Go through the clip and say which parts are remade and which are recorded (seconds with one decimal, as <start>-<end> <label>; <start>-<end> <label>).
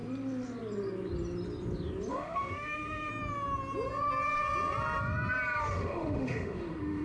0.0-2.1 recorded; 2.1-3.1 remade; 3.1-5.6 recorded; 5.6-7.0 remade